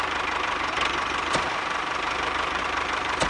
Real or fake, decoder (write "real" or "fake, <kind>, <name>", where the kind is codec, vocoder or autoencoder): fake, vocoder, BigVGAN v2